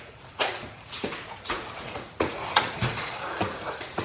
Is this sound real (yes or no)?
no